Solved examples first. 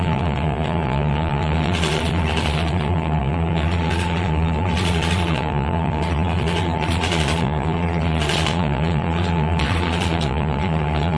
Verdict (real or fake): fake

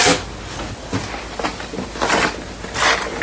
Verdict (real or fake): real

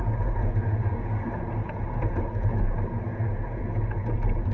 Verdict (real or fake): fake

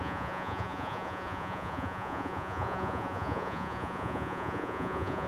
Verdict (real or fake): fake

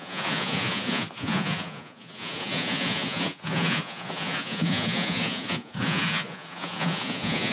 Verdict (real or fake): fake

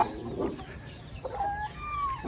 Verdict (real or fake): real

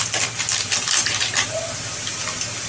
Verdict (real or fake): real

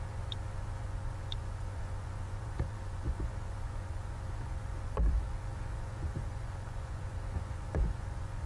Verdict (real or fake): fake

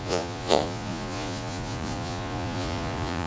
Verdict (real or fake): fake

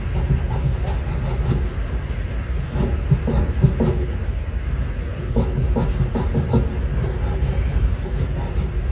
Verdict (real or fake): real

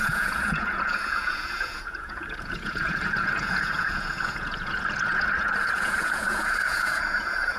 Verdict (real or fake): fake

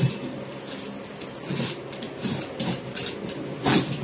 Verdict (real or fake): real